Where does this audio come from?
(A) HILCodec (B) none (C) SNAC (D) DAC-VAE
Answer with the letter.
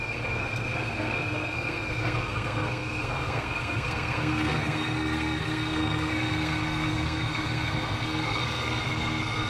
C